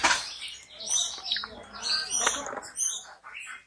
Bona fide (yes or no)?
yes